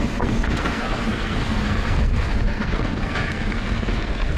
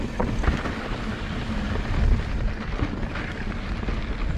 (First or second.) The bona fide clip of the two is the second